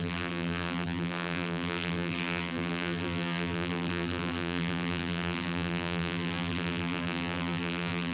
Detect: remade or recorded remade